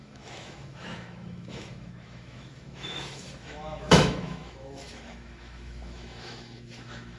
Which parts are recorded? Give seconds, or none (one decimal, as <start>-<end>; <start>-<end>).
none